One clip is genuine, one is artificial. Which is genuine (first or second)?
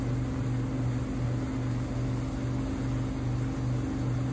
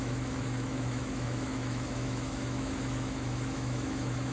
first